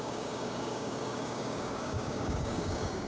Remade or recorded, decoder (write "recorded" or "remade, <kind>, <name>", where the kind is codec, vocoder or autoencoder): remade, codec, DAC